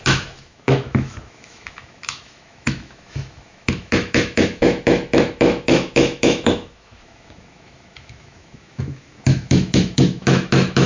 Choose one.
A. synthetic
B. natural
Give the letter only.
A